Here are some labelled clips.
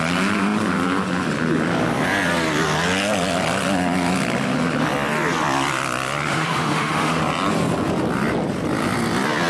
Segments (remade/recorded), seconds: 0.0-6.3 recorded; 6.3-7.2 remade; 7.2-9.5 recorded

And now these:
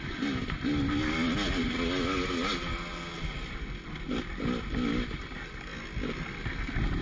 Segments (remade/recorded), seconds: 0.0-7.0 recorded

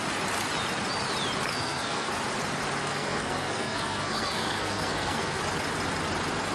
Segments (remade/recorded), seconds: 0.0-1.5 recorded; 1.5-2.1 remade; 2.1-2.8 recorded; 2.8-5.4 remade; 5.4-6.5 recorded